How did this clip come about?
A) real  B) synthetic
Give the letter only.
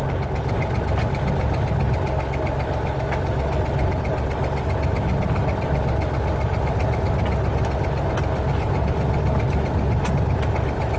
A